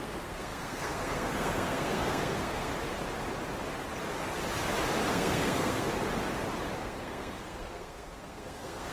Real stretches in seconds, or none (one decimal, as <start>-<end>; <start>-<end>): 2.7-5.1; 5.9-6.8